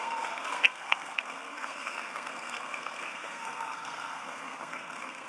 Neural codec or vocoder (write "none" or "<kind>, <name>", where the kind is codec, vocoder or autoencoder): codec, SNAC